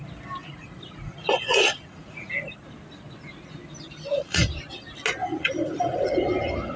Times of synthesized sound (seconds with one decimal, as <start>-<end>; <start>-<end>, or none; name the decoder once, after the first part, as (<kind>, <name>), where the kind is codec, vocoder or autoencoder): 0.4-2.3 (vocoder, Vocos); 4.1-4.6; 5.2-6.8